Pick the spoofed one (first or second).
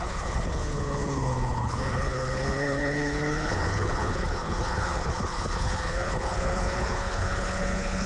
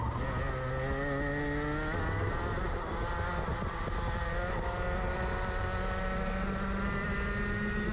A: first